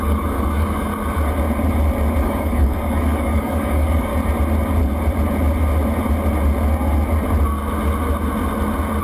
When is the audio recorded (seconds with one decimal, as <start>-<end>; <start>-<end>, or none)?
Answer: 0.9-2.2; 4.1-9.0